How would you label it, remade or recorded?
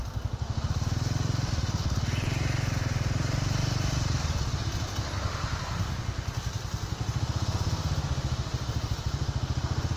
recorded